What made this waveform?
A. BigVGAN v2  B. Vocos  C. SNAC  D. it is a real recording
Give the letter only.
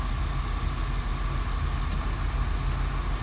D